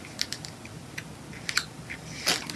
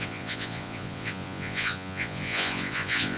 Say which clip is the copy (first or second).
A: second